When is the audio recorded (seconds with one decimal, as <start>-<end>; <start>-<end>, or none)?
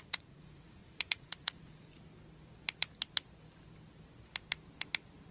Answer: 1.9-5.3